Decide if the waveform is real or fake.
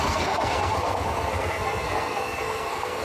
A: fake